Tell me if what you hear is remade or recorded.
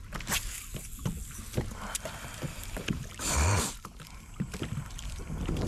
recorded